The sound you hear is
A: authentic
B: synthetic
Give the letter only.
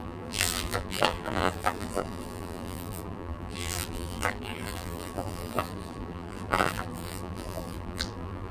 B